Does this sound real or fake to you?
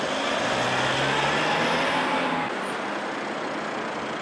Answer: real